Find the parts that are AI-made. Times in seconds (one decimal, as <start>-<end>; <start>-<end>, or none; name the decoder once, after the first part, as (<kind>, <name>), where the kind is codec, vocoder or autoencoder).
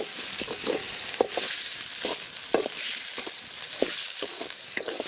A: 0.0-0.8 (codec, DAC); 3.9-5.1